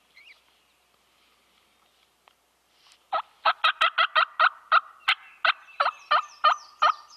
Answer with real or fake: real